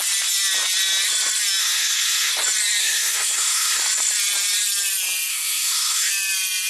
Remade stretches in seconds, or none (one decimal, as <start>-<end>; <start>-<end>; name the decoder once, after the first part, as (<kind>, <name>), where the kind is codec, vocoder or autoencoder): 1.6-2.3 (codec, SNAC); 2.8-3.8; 5.3-6.1